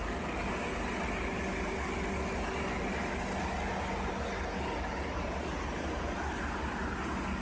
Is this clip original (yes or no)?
yes